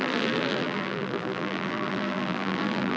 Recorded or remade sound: remade